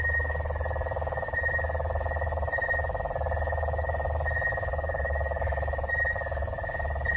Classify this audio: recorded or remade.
recorded